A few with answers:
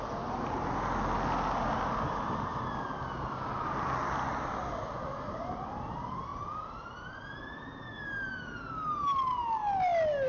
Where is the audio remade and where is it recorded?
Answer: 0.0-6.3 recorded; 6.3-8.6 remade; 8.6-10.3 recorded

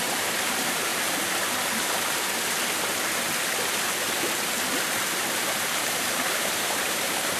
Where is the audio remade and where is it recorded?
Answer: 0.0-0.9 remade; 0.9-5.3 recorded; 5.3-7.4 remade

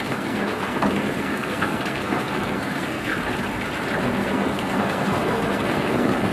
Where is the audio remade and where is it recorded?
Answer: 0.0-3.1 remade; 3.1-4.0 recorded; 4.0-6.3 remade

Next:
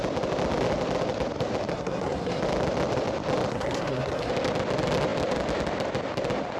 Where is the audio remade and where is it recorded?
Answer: 0.0-1.7 recorded; 1.7-2.4 remade; 2.4-3.5 recorded; 3.5-4.3 remade; 4.3-6.6 recorded

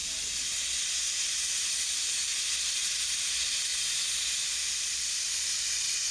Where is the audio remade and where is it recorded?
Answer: 0.0-3.3 remade; 3.3-3.7 recorded; 3.7-5.3 remade; 5.3-6.1 recorded

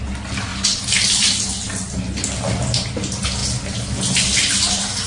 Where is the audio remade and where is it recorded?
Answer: 0.0-5.1 recorded

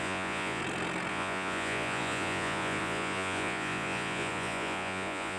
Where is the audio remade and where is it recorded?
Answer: 0.0-0.6 remade; 0.6-1.1 recorded; 1.1-5.4 remade

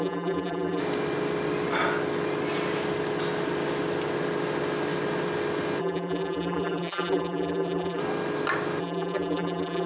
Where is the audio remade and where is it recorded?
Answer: 0.0-0.8 remade; 0.8-5.8 recorded; 5.8-8.0 remade; 8.0-8.8 recorded; 8.8-9.9 remade